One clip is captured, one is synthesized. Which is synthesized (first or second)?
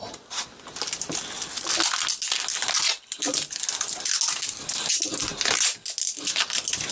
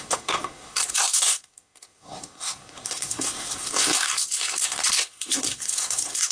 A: second